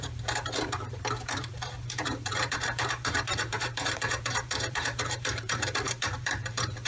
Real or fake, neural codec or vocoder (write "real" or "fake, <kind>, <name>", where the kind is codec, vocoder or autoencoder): fake, vocoder, BigVGAN v2